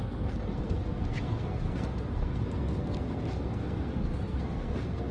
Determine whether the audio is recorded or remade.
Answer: remade